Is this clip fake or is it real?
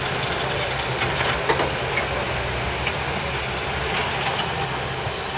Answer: real